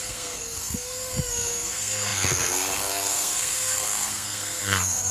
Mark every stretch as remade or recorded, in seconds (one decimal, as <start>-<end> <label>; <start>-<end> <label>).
0.0-5.1 remade